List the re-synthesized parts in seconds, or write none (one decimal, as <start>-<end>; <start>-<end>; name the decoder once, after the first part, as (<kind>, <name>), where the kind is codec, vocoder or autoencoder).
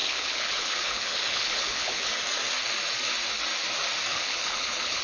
0.0-2.1 (codec, HILCodec); 4.1-5.0